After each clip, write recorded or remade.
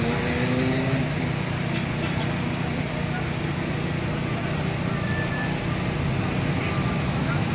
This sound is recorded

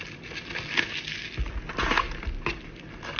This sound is recorded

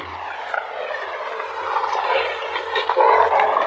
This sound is recorded